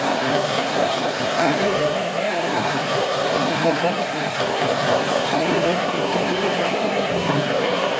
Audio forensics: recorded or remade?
remade